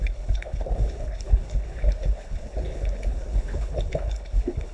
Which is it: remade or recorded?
remade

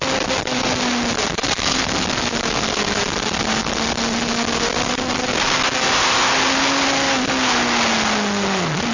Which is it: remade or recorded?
recorded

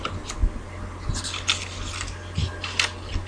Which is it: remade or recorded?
recorded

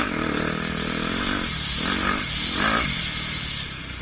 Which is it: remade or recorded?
recorded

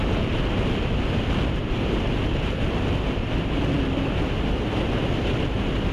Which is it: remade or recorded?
recorded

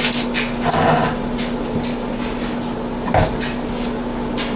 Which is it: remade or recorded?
recorded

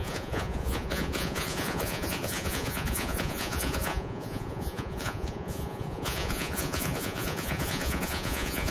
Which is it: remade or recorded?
remade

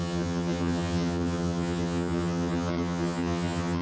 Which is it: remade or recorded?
remade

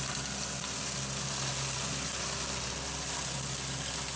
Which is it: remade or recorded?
recorded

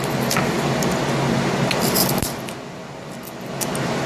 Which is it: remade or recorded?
recorded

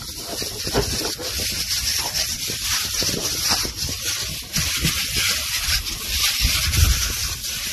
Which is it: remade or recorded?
recorded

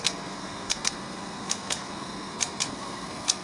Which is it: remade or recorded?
remade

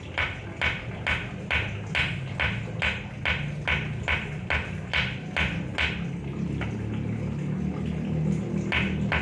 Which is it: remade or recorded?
recorded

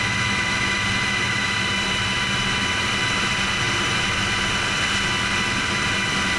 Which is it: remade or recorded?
recorded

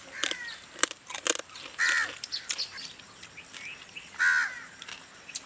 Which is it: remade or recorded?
recorded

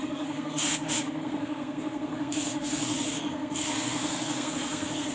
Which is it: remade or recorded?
remade